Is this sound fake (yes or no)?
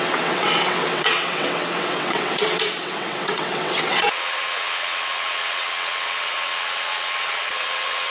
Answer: yes